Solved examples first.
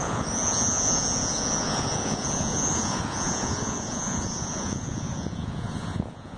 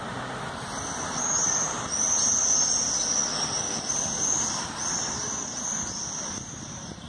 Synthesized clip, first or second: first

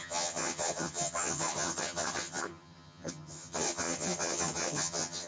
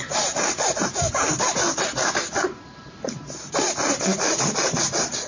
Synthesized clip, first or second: first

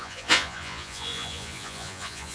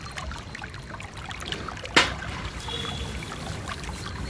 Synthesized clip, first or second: first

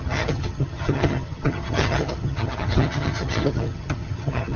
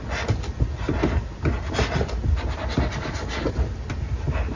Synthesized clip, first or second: first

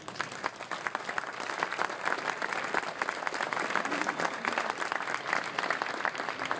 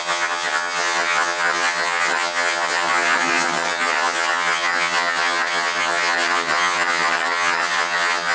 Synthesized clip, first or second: second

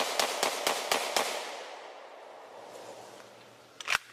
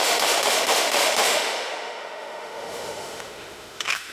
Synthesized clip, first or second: second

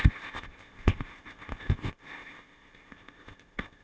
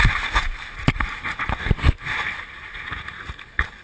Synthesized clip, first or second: first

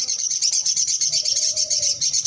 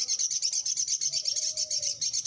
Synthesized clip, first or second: first